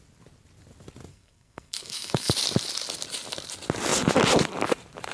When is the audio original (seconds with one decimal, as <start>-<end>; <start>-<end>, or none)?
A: 0.0-1.1; 2.3-5.1